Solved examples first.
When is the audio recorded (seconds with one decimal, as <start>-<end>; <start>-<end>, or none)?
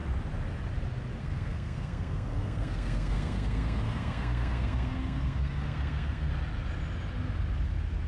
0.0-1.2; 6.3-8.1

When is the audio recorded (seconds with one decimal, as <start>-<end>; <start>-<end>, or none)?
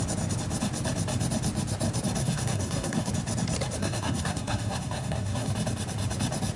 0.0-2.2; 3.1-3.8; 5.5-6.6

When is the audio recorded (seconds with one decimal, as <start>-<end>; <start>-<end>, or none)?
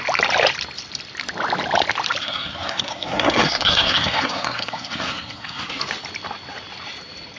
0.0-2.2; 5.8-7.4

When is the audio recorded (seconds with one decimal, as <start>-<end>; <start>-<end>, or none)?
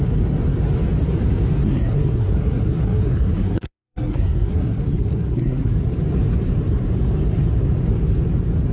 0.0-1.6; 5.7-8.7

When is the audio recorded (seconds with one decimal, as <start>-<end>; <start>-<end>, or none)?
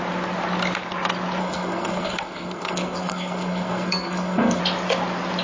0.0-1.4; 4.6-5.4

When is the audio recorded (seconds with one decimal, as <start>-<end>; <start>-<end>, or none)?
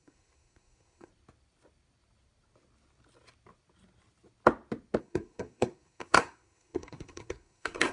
1.1-5.0